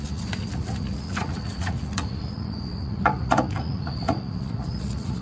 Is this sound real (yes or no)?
no